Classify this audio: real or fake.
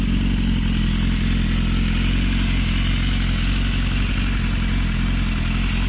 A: real